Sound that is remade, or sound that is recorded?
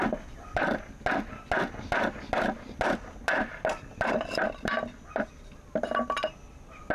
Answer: recorded